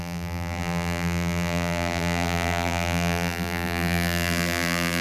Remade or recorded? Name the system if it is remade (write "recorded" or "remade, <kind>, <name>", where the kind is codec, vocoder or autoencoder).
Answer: remade, vocoder, BigVGAN v2